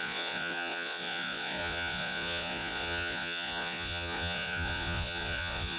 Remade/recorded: remade